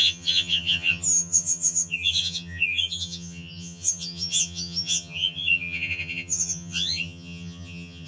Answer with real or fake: fake